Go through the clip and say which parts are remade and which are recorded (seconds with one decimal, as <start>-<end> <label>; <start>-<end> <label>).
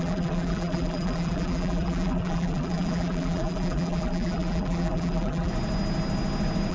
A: 0.0-5.5 remade; 5.5-6.7 recorded